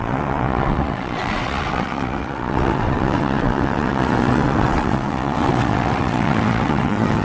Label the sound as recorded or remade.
remade